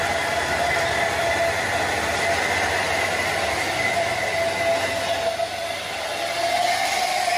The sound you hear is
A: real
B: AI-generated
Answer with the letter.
A